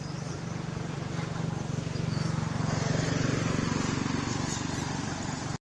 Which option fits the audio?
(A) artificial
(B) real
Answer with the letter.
B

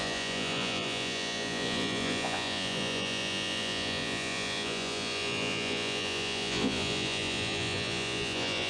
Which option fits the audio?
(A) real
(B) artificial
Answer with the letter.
B